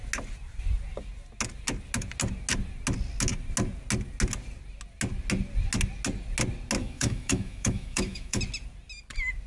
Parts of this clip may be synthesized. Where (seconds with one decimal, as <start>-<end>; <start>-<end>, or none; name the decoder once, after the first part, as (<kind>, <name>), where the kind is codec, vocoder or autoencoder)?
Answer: 6.8-8.4 (autoencoder, DAC-VAE)

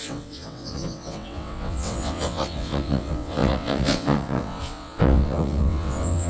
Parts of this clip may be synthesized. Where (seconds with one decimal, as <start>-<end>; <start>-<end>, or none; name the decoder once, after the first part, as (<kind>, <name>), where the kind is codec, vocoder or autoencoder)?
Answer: 0.0-6.3 (vocoder, WaveNeXt)

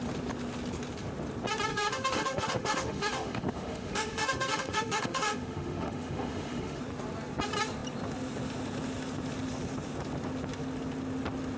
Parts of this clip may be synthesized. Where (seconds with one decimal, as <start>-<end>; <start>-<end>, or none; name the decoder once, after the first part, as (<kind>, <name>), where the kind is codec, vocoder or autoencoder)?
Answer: 1.7-6.8 (autoencoder, DAC-VAE)

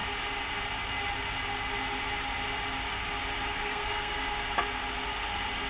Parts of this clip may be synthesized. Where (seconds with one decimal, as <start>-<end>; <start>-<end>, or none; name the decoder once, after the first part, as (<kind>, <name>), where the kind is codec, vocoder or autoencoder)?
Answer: 3.6-4.2 (codec, SNAC)

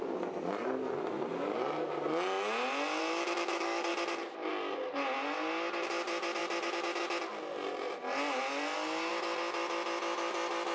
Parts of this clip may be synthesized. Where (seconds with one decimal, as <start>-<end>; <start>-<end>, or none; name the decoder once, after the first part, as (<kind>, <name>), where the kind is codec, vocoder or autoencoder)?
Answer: 3.0-3.9 (autoencoder, DAC-VAE)

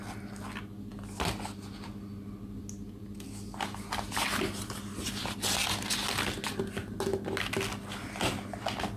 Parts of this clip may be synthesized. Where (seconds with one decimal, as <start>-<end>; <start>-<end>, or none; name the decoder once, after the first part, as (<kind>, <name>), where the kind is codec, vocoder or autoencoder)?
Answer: none

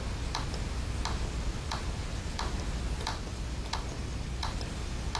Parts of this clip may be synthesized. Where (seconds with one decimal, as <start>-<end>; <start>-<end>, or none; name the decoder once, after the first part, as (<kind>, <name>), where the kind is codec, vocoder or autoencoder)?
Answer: none

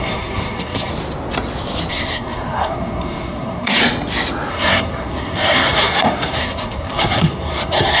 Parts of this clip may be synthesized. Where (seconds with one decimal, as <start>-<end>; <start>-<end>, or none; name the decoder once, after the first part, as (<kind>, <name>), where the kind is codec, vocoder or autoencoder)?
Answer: 0.0-0.9 (codec, SNAC); 1.9-3.8; 4.5-8.0